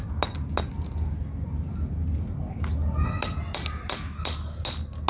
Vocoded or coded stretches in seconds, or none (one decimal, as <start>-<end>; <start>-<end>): none